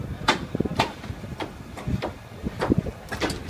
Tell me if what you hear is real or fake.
fake